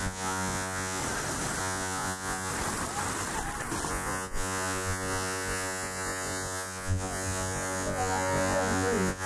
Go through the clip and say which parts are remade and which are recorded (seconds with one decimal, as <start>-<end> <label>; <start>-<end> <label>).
0.0-1.0 remade; 1.0-1.6 recorded; 1.6-2.5 remade; 2.5-3.9 recorded; 3.9-9.3 remade

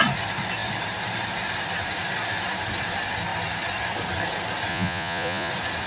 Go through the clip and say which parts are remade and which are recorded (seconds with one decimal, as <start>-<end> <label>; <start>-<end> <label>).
0.0-4.7 recorded; 4.7-5.5 remade; 5.5-5.9 recorded

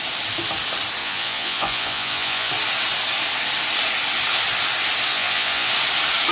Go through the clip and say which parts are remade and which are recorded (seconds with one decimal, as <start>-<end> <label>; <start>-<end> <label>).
0.0-1.0 recorded; 1.0-2.5 remade; 2.5-5.1 recorded; 5.1-5.7 remade; 5.7-6.3 recorded

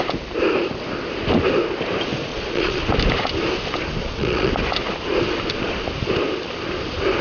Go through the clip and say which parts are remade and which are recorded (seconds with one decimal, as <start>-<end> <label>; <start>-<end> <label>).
0.0-2.3 recorded; 2.3-2.8 remade; 2.8-4.0 recorded; 4.0-4.5 remade; 4.5-7.2 recorded